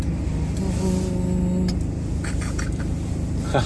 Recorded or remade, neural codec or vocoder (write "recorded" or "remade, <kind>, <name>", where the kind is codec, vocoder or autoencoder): recorded